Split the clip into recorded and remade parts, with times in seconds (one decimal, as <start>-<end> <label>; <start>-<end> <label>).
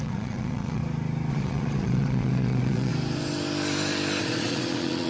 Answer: 0.0-0.8 remade; 0.8-1.3 recorded; 1.3-2.9 remade; 2.9-4.2 recorded; 4.2-5.1 remade